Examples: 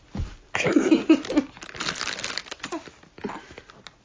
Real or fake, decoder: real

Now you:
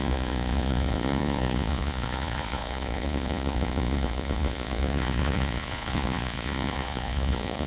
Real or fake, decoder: fake, vocoder, Vocos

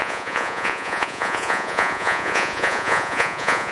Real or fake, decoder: fake, vocoder, Vocos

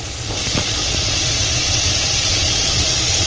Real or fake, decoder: fake, vocoder, Vocos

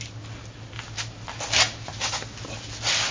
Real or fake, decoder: real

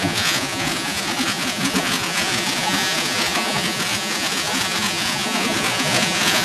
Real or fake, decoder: fake, vocoder, Vocos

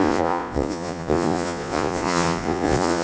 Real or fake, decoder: fake, vocoder, Vocos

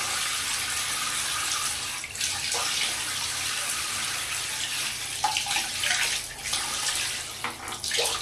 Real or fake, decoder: real